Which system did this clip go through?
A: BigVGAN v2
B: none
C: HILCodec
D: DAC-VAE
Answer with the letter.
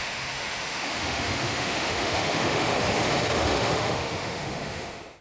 D